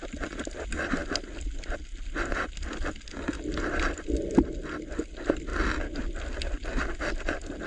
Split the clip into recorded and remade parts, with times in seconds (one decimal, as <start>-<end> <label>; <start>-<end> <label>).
0.0-7.7 recorded